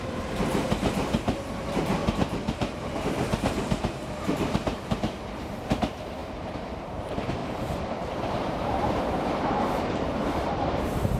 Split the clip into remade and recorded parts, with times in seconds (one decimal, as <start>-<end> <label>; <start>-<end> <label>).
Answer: 0.0-2.0 remade; 2.0-2.7 recorded; 2.7-6.2 remade; 6.2-6.8 recorded; 6.8-11.2 remade